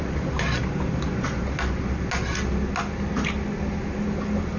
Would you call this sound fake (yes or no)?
no